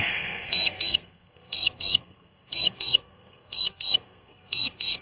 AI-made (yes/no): yes